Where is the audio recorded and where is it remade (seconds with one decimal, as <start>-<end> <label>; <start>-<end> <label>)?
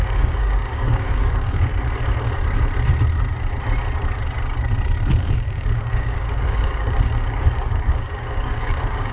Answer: 0.0-1.7 remade; 1.7-5.2 recorded; 5.2-9.1 remade